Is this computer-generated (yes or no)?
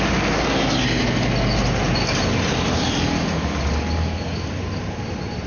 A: no